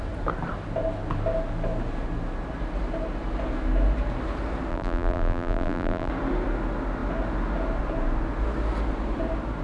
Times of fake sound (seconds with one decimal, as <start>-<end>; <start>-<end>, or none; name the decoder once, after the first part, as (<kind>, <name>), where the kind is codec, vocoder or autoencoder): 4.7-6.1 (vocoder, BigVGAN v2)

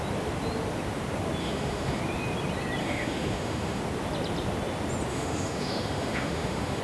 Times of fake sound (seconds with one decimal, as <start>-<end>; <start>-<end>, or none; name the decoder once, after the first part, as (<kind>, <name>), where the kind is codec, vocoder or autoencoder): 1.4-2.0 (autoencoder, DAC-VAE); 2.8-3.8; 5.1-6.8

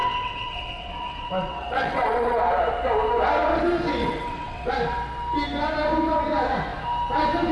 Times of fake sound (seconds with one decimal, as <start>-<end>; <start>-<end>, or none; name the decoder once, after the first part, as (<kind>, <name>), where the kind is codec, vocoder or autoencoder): 0.0-2.4 (vocoder, WaveNeXt); 4.0-4.7

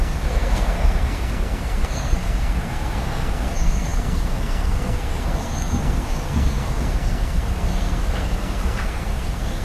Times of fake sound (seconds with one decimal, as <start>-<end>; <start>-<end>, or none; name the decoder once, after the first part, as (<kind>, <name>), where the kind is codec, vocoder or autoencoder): 0.0-9.6 (codec, SNAC)